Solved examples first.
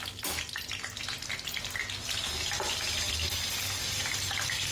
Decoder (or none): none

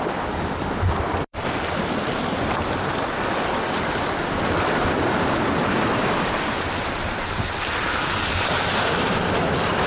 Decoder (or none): vocoder, BigVGAN v2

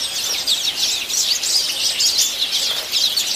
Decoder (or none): none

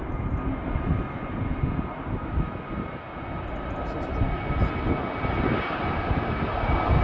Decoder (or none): none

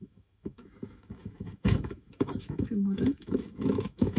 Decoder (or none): autoencoder, DAC-VAE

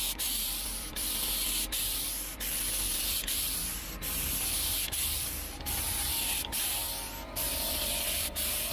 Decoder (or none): vocoder, BigVGAN v2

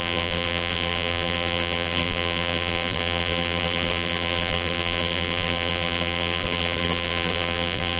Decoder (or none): vocoder, BigVGAN v2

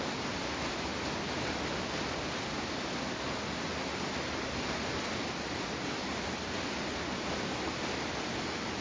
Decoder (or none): none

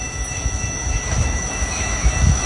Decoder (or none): autoencoder, DAC-VAE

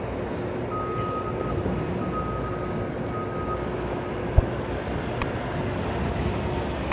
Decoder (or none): none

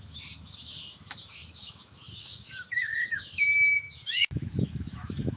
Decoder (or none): autoencoder, DAC-VAE